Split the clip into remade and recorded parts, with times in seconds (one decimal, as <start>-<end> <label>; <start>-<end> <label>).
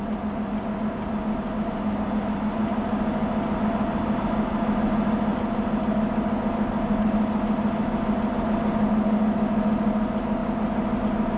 0.0-11.4 recorded